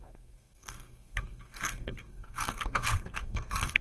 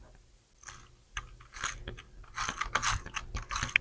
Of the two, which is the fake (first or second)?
first